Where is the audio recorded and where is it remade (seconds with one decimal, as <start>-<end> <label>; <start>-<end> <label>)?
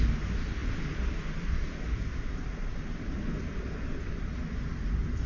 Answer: 0.0-5.3 recorded